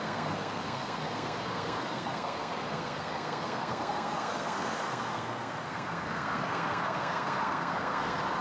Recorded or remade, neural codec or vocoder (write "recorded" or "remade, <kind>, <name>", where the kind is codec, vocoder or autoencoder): remade, codec, SNAC